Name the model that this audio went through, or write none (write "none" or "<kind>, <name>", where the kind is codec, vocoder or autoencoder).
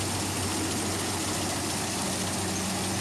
none